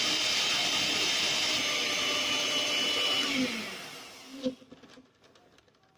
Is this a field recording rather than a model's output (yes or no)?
yes